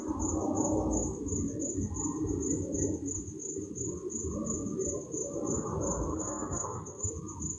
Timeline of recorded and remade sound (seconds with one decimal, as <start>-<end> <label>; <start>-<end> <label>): 0.0-6.1 recorded; 6.1-7.1 remade; 7.1-7.6 recorded